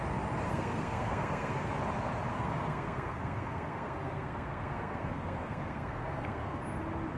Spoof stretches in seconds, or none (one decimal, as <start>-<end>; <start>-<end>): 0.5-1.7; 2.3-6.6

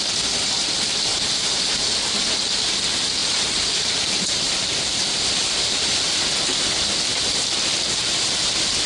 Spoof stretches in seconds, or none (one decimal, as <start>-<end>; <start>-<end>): 1.1-2.3; 3.2-5.9; 7.7-8.5

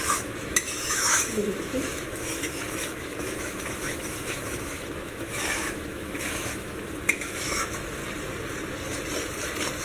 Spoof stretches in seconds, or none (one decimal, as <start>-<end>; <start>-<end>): 0.0-8.0

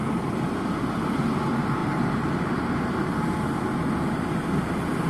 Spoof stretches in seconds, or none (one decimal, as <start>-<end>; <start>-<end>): 0.0-1.8

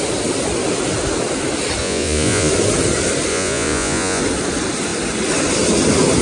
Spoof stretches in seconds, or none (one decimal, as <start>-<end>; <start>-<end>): 1.8-2.5; 3.3-4.2